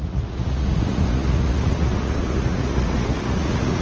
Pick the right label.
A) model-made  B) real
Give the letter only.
A